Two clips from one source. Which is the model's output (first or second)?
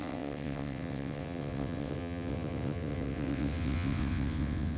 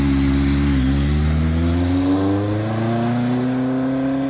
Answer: first